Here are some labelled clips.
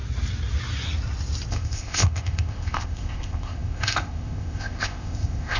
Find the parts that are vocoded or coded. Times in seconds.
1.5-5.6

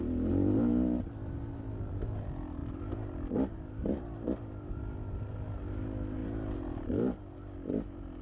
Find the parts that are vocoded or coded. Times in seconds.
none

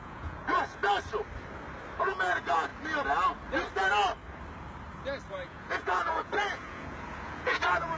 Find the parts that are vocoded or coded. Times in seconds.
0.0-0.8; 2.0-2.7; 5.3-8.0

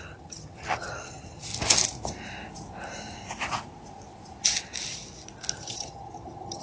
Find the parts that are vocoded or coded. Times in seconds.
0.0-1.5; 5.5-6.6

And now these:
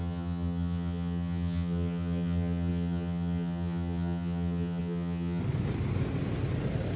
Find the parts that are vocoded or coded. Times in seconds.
0.0-5.4